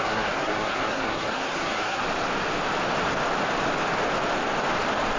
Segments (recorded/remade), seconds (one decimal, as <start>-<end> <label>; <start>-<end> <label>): 0.0-2.0 remade; 2.0-5.2 recorded